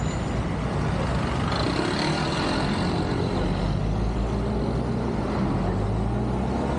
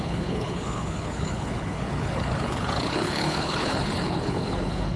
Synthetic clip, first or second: second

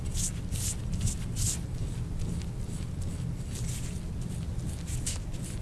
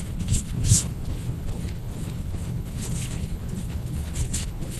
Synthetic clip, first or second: second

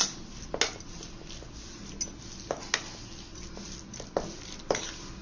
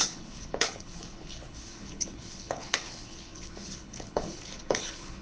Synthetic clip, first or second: second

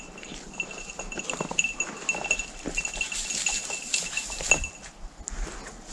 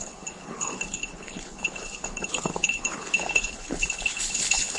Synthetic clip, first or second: second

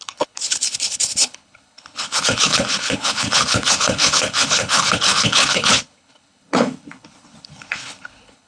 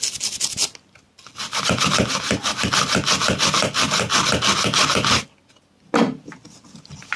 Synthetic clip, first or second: first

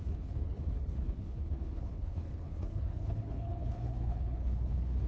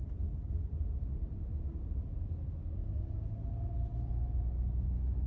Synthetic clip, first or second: first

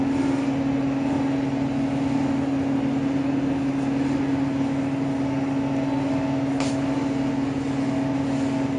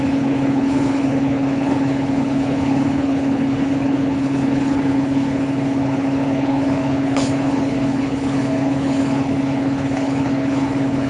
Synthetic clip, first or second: second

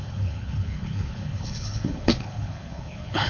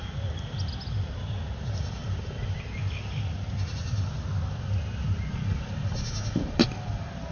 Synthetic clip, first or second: first